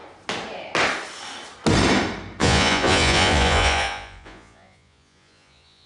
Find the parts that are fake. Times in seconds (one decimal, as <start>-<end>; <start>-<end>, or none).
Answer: 2.4-5.9